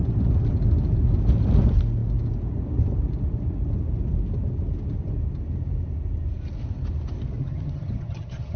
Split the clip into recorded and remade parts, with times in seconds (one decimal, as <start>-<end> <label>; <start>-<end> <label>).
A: 0.0-7.4 recorded; 7.4-8.6 remade